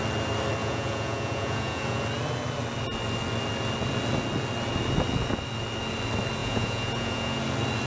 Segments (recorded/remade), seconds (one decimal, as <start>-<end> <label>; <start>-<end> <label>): 0.0-0.6 recorded; 0.6-2.0 remade; 2.0-6.4 recorded; 6.4-7.4 remade; 7.4-7.9 recorded